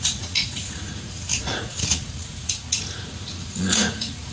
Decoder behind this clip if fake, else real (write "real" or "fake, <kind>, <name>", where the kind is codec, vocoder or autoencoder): fake, vocoder, Vocos